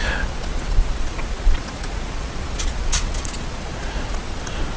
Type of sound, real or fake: fake